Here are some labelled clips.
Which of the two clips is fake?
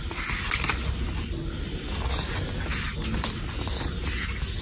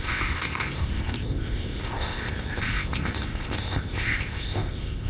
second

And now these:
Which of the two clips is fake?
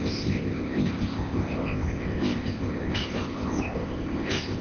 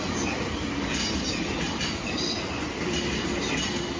first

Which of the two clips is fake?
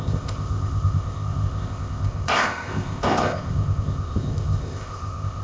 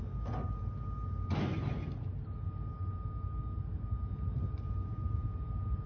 first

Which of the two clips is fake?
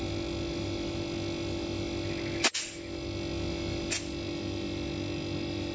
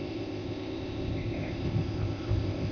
second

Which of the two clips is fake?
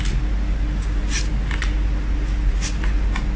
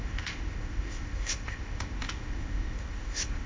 second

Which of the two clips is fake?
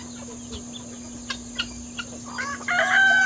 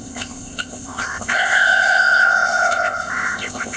second